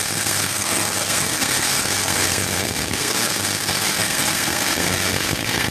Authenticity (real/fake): fake